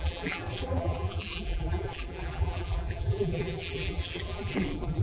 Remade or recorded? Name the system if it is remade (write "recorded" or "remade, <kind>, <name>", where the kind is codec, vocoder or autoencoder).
remade, vocoder, BigVGAN v2